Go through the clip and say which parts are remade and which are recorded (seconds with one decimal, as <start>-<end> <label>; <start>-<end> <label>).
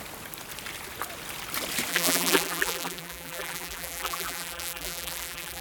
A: 0.0-1.9 recorded; 1.9-5.6 remade